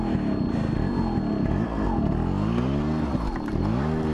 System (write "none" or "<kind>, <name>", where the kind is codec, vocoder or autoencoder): none